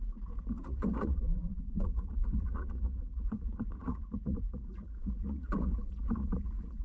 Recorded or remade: remade